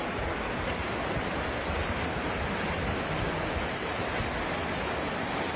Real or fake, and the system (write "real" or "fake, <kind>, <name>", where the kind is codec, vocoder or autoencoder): real